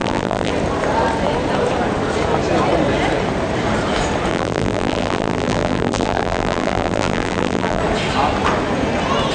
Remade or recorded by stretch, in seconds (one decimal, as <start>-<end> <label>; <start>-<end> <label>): 0.0-0.5 remade; 0.5-4.3 recorded; 4.3-7.8 remade; 7.8-9.3 recorded